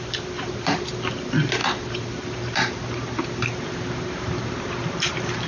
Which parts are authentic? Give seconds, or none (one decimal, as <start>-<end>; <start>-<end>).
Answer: none